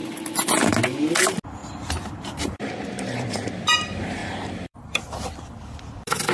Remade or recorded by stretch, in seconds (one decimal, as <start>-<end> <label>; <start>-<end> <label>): 0.0-1.6 recorded; 1.6-3.5 remade; 3.5-4.2 recorded; 4.2-5.0 remade; 5.0-6.3 recorded